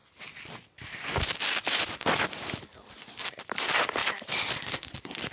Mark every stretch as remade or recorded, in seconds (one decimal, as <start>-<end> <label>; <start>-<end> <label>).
0.0-1.8 recorded; 1.8-5.3 remade